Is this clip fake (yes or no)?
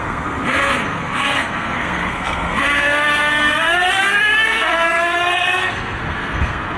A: yes